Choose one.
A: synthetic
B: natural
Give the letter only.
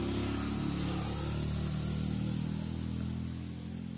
B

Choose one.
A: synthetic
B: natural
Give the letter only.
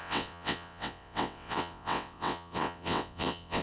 A